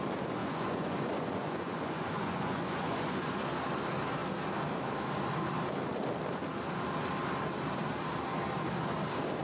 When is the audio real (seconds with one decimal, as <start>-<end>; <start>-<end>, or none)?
0.0-0.4; 3.4-9.4